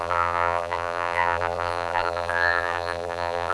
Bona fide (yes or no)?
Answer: no